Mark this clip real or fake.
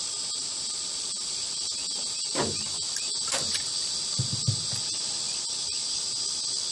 real